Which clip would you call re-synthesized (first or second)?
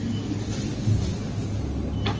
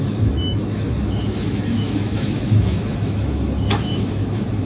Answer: second